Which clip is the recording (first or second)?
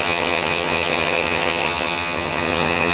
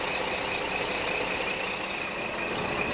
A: second